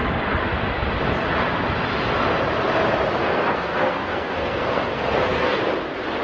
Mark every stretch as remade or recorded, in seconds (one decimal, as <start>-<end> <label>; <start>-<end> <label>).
0.0-3.2 recorded; 3.2-5.6 remade; 5.6-6.2 recorded